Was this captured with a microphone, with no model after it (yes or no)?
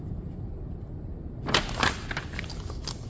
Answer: no